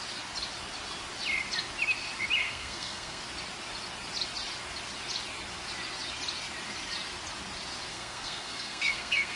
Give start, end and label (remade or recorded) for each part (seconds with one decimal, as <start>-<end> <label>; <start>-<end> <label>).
0.0-2.4 recorded; 2.4-3.2 remade; 3.2-7.9 recorded; 7.9-9.4 remade